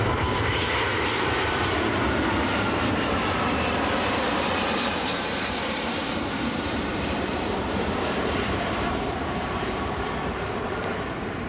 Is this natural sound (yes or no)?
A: no